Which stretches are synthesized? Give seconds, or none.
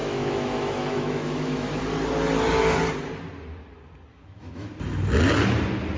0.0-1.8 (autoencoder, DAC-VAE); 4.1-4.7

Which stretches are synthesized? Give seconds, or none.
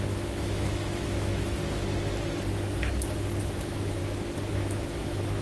0.0-1.6 (autoencoder, DAC-VAE); 2.5-2.9; 3.4-4.0; 4.5-5.4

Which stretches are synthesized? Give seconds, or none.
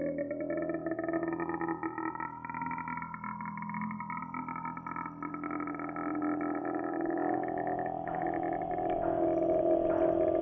0.8-2.8 (autoencoder, DAC-VAE); 6.6-8.6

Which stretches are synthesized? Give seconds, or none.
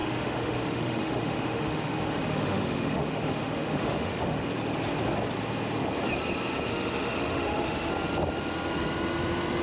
0.0-4.5 (autoencoder, DAC-VAE); 6.7-7.9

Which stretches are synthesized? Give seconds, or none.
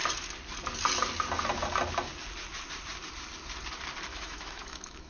4.1-5.1 (autoencoder, DAC-VAE)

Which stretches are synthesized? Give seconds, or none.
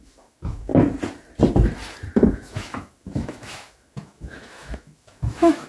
0.0-0.7 (autoencoder, DAC-VAE); 2.3-5.7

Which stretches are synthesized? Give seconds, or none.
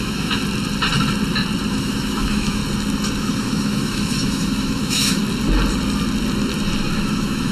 0.0-0.4 (autoencoder, DAC-VAE); 1.7-2.6; 3.2-5.2; 7.0-7.5